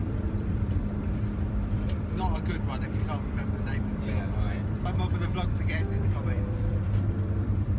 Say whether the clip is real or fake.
fake